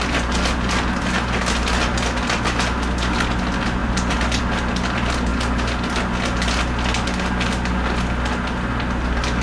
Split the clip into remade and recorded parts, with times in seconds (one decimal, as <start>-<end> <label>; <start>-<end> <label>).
0.0-9.4 recorded